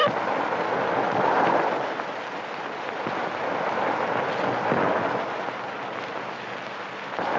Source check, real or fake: real